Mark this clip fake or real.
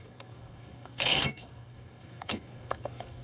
fake